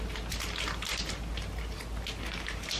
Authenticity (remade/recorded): recorded